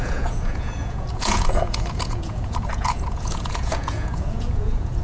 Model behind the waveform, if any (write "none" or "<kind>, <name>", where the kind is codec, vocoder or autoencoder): vocoder, Vocos